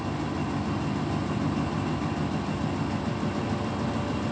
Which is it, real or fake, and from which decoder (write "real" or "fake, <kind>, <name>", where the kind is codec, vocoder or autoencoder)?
real